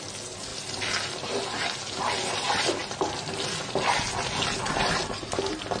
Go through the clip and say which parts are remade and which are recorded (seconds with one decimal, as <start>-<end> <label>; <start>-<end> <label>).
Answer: 0.0-5.8 recorded